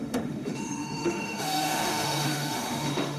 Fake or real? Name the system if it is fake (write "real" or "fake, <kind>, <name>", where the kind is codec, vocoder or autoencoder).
fake, autoencoder, DAC-VAE